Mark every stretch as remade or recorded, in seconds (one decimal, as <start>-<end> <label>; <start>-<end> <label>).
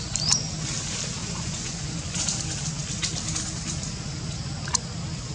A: 0.0-1.2 recorded; 1.2-2.2 remade; 2.2-5.3 recorded